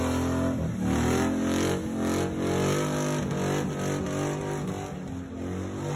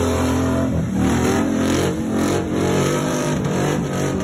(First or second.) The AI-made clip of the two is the second